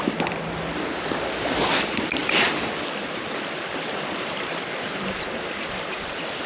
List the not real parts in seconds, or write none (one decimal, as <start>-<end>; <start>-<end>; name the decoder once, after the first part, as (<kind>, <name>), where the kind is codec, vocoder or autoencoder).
0.0-6.5 (vocoder, BigVGAN v2)